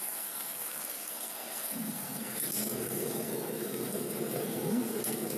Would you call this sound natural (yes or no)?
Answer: no